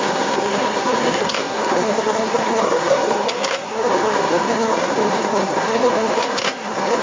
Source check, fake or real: fake